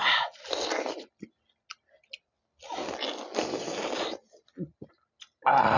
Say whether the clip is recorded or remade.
recorded